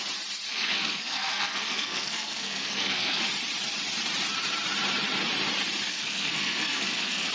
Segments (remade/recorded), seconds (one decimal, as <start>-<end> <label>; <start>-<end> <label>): 0.0-0.5 recorded; 0.5-3.2 remade; 3.2-5.9 recorded; 5.9-7.3 remade